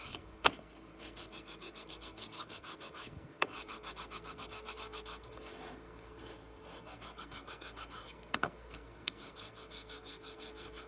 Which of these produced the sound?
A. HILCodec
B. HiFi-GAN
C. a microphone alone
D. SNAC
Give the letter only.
D